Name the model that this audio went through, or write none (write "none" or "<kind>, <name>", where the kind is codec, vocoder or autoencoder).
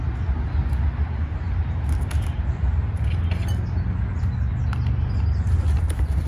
none